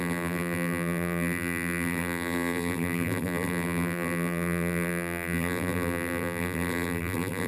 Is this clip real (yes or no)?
no